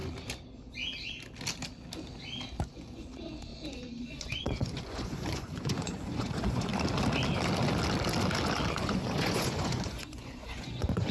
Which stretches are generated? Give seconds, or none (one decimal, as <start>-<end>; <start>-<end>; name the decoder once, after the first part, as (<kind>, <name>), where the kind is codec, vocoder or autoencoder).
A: 2.6-6.7 (vocoder, Vocos); 8.7-11.1